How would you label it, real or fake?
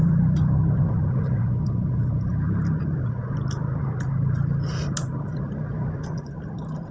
real